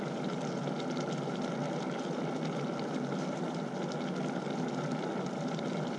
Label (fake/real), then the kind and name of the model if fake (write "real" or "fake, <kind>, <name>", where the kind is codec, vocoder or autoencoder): real